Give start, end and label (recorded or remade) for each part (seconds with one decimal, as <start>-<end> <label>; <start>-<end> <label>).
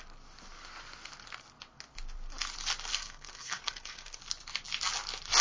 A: 0.0-2.9 recorded; 2.9-4.2 remade; 4.2-5.4 recorded